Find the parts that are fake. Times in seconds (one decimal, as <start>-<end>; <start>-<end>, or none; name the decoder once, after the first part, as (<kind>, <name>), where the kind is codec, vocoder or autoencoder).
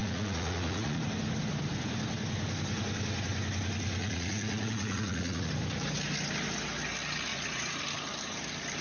0.0-1.0 (vocoder, Vocos); 4.0-5.5; 7.3-7.8